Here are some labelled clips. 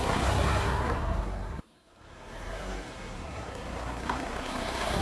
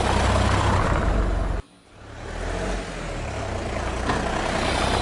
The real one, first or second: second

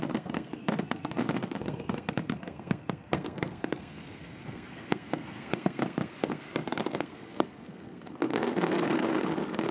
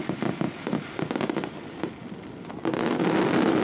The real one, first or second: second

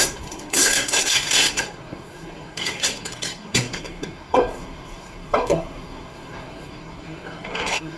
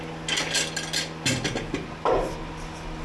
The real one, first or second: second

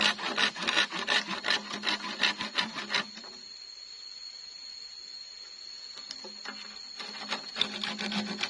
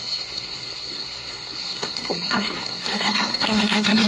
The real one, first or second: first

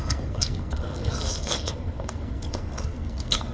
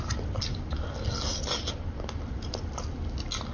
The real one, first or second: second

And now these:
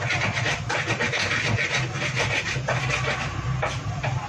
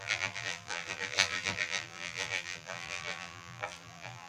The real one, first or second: first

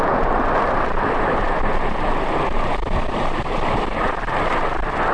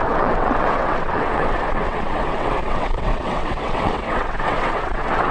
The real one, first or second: first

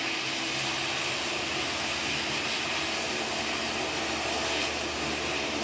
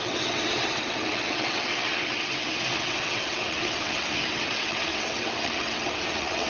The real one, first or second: first